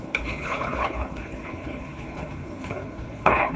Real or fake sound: fake